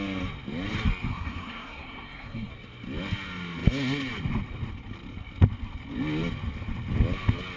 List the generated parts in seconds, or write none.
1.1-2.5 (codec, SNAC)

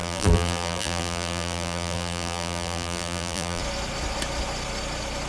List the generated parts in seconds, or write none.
0.0-3.6 (vocoder, BigVGAN v2)

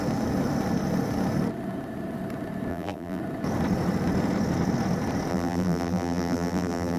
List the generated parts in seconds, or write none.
2.7-3.2 (vocoder, BigVGAN v2); 5.3-7.0

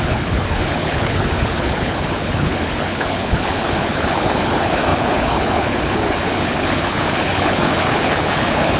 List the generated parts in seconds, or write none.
0.0-8.8 (codec, HILCodec)

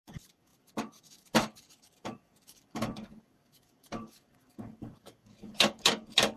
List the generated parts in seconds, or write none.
0.0-6.4 (codec, DAC)

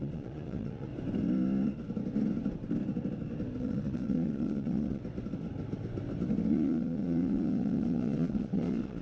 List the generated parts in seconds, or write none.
0.0-0.9 (vocoder, Vocos); 3.6-5.0; 6.5-9.0

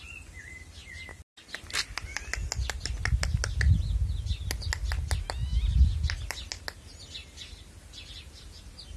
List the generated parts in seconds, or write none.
none